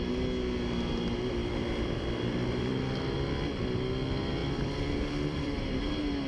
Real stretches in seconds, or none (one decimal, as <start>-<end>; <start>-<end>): 0.0-1.4; 3.0-4.4; 5.8-6.3